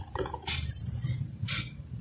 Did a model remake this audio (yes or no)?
yes